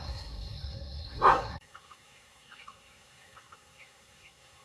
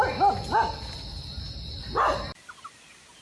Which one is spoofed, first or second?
first